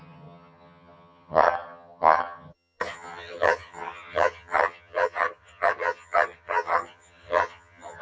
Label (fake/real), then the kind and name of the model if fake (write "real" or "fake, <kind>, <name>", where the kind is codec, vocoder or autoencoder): fake, vocoder, HiFi-GAN